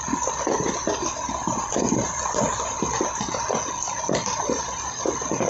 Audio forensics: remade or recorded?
recorded